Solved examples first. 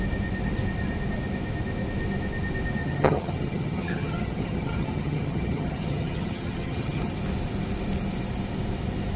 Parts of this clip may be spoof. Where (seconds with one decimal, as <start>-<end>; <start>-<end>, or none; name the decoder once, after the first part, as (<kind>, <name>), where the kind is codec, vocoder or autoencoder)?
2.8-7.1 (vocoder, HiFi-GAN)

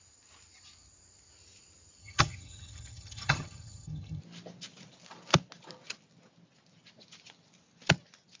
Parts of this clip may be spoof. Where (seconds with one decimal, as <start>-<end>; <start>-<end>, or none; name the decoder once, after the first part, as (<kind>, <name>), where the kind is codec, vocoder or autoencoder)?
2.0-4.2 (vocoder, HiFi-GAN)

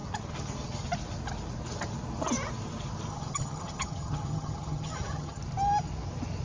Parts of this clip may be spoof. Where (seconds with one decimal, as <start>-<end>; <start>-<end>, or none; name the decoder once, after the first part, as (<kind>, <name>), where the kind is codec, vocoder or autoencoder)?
3.1-5.4 (vocoder, HiFi-GAN)

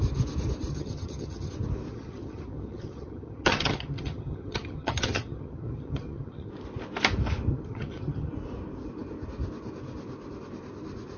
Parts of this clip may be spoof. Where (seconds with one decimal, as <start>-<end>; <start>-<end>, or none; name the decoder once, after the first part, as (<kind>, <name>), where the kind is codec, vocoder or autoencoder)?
0.7-1.5 (vocoder, HiFi-GAN); 1.9-6.5; 7.5-8.3

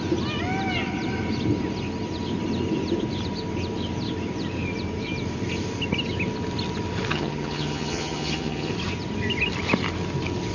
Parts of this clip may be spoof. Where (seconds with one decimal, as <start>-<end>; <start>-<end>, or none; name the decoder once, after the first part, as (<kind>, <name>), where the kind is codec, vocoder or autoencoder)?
7.1-8.7 (vocoder, HiFi-GAN)

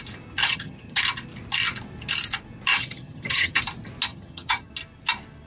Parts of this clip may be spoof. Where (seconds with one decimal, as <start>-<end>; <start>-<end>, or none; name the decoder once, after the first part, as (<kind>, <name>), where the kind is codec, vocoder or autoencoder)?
0.4-1.0 (vocoder, HiFi-GAN); 2.7-3.6; 4.1-4.7

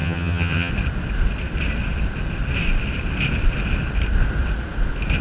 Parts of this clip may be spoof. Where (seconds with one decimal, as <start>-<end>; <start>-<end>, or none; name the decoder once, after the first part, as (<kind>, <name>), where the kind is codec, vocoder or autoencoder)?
0.0-0.7 (vocoder, HiFi-GAN)

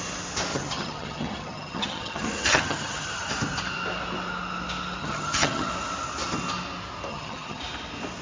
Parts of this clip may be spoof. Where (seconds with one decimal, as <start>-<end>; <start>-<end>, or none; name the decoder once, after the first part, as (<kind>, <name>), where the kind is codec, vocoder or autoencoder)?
0.5-3.3 (vocoder, HiFi-GAN); 5.0-5.7; 7.1-7.6